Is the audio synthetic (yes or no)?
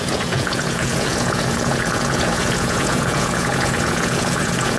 yes